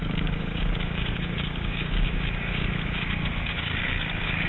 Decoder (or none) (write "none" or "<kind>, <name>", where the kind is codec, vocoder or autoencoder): codec, DAC